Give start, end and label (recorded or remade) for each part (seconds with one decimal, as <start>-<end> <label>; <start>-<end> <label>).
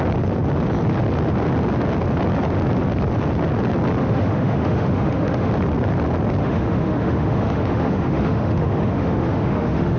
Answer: 0.0-4.0 recorded; 4.0-5.5 remade; 5.5-6.4 recorded; 6.4-10.0 remade